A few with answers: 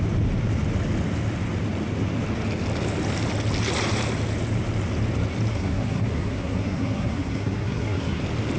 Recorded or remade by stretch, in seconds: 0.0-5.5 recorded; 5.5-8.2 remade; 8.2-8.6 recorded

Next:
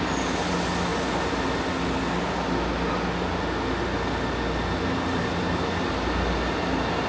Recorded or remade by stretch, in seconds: 0.0-7.1 recorded

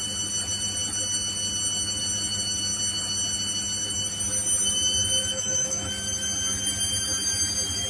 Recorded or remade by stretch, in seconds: 0.0-5.3 recorded; 5.3-5.9 remade; 5.9-7.9 recorded